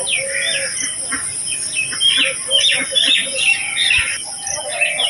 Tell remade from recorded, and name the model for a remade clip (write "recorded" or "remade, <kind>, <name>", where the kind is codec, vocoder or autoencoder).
recorded